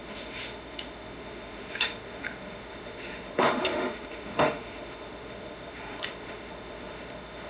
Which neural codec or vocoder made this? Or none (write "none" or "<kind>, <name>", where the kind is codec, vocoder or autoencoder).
autoencoder, DAC-VAE